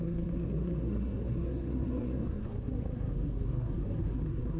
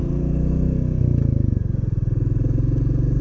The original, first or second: second